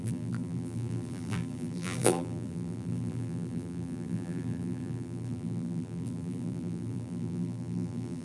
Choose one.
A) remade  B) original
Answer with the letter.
A